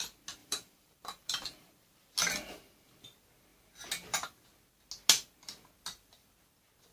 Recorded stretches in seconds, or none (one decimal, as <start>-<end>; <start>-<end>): 0.0-0.4; 2.1-6.9